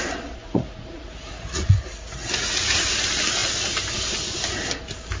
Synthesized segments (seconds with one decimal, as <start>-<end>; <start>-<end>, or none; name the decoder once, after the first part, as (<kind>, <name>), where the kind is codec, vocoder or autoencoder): 0.4-2.8 (vocoder, Vocos)